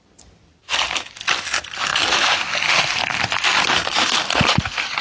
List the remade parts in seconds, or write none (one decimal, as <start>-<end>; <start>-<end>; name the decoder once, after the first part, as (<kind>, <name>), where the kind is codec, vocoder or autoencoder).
0.0-1.9 (vocoder, BigVGAN v2); 2.7-5.0